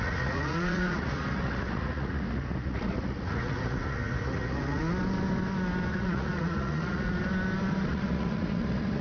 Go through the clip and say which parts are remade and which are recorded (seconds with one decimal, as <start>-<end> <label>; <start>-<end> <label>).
0.0-4.8 remade; 4.8-5.9 recorded; 5.9-7.2 remade; 7.2-7.9 recorded; 7.9-9.0 remade

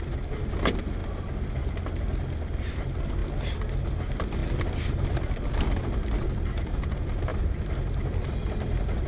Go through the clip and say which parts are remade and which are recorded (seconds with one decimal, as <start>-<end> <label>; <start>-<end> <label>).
0.0-1.0 remade; 1.0-1.5 recorded; 1.5-3.2 remade; 3.2-3.8 recorded; 3.8-7.3 remade; 7.3-8.2 recorded; 8.2-9.1 remade

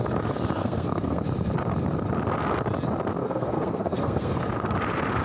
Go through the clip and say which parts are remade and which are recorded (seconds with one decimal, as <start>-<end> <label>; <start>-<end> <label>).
0.0-0.6 recorded; 0.6-1.2 remade; 1.2-3.2 recorded; 3.2-4.4 remade; 4.4-5.2 recorded

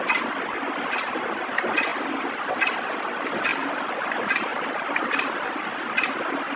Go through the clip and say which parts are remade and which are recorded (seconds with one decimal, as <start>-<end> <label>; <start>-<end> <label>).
0.0-3.6 recorded; 3.6-5.1 remade; 5.1-6.6 recorded

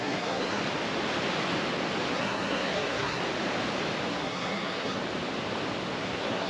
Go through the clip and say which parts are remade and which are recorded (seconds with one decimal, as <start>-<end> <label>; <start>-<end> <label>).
0.0-0.6 remade; 0.6-2.1 recorded; 2.1-3.2 remade; 3.2-4.1 recorded; 4.1-5.0 remade; 5.0-6.0 recorded; 6.0-6.5 remade

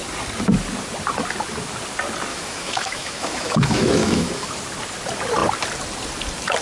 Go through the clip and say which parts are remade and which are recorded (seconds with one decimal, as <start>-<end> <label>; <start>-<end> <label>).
0.0-2.3 recorded; 2.3-4.5 remade; 4.5-6.6 recorded